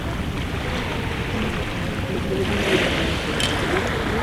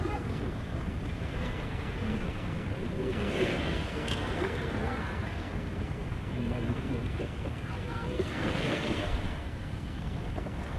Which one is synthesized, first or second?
second